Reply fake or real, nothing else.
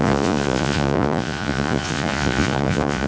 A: fake